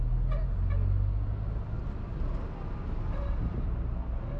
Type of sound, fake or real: real